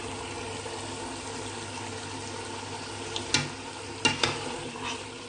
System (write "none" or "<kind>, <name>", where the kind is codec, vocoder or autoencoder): none